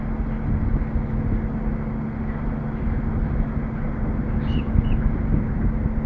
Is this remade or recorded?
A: recorded